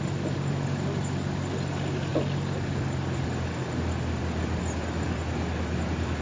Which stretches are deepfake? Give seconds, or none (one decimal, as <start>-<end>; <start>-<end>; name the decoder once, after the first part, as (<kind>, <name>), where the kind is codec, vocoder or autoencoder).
none